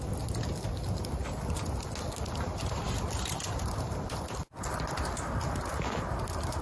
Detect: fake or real real